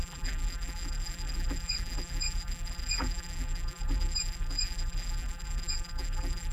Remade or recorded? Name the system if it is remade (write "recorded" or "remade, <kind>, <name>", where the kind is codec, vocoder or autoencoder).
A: remade, vocoder, BigVGAN v2